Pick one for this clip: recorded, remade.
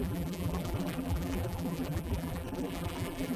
remade